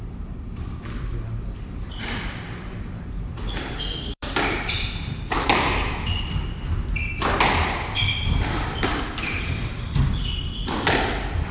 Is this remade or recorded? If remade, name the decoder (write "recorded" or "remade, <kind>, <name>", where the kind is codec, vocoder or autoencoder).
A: remade, vocoder, BigVGAN v2